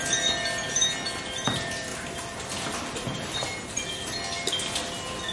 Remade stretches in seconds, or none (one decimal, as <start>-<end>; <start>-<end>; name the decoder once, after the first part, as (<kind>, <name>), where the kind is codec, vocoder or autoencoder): none